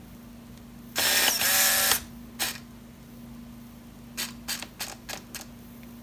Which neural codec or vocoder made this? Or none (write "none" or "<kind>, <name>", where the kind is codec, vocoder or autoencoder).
none